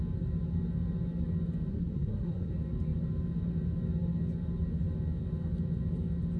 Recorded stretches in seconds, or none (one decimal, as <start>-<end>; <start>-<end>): 0.0-1.7; 2.5-6.4